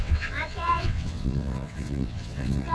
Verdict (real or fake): fake